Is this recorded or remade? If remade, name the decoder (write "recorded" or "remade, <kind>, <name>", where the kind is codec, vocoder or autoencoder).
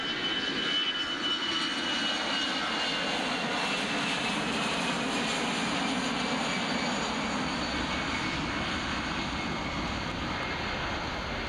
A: recorded